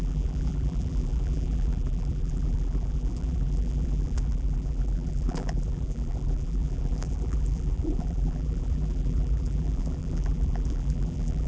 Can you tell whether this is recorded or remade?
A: remade